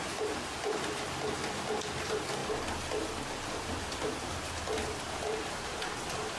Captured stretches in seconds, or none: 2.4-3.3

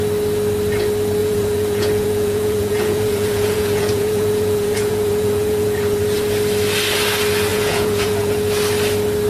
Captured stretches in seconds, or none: 0.0-1.2; 6.0-7.5; 8.3-9.3

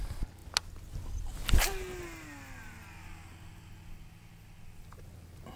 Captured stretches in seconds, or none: 0.0-5.6